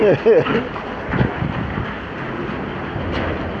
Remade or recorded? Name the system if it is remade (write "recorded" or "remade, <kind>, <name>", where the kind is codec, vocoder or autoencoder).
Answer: recorded